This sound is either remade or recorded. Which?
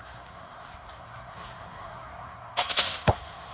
remade